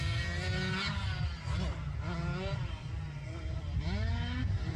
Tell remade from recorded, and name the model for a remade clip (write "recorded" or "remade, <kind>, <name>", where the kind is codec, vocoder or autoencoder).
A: recorded